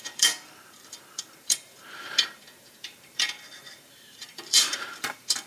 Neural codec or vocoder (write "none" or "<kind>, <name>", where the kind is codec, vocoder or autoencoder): vocoder, BigVGAN v2